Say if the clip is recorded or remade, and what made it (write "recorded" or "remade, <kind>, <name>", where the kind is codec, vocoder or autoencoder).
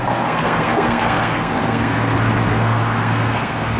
remade, codec, SNAC